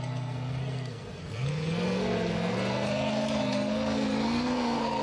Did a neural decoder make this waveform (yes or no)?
yes